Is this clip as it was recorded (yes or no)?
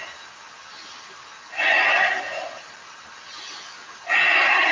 yes